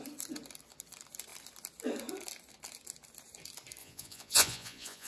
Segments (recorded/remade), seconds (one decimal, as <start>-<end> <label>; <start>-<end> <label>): 0.0-3.8 recorded; 3.8-5.1 remade